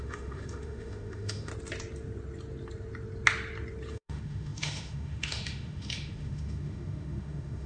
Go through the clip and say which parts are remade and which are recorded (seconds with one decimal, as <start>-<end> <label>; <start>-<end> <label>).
0.0-1.5 remade; 1.5-3.9 recorded; 3.9-7.7 remade